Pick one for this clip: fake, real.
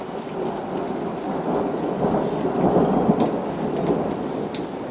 real